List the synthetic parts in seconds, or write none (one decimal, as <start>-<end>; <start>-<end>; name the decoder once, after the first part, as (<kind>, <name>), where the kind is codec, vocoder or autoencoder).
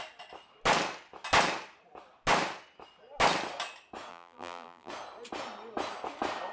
4.1-4.9 (vocoder, BigVGAN v2)